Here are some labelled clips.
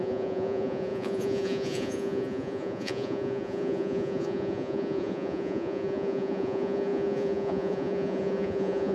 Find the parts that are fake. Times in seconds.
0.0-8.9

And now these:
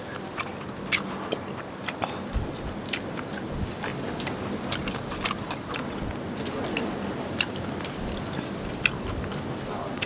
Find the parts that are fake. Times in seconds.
0.0-0.5; 3.1-3.9; 5.7-10.1

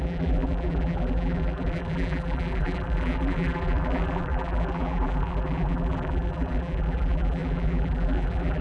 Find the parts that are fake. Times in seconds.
0.0-8.6

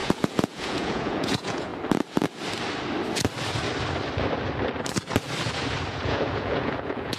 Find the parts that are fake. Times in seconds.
0.0-1.7; 5.9-7.2

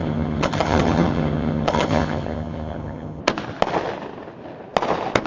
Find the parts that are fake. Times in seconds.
0.0-3.2

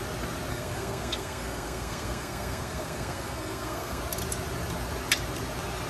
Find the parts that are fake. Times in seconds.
0.5-4.0

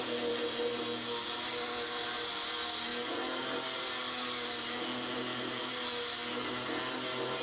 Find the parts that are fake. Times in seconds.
none

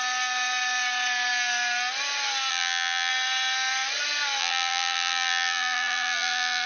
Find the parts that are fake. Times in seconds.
2.5-3.1; 4.4-6.7